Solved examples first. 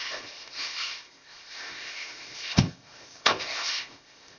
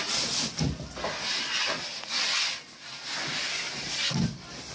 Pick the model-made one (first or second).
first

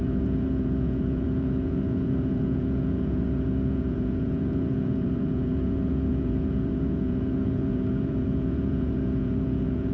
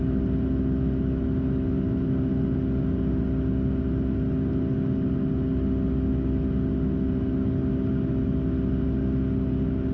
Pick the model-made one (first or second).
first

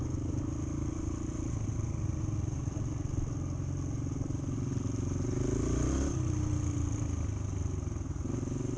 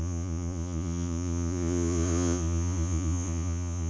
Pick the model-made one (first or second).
second